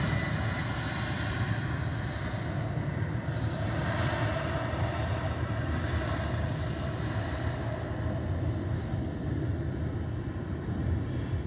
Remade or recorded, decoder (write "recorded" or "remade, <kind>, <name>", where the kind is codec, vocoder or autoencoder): recorded